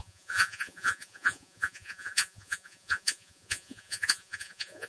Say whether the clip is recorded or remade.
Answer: remade